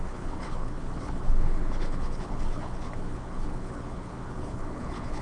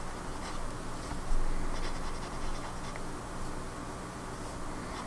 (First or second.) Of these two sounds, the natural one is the second